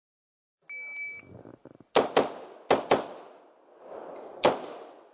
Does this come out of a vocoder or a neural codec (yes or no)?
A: no